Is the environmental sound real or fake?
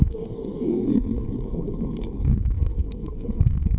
fake